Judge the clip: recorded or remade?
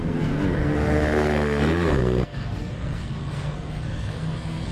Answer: remade